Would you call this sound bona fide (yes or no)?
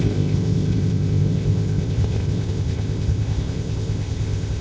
no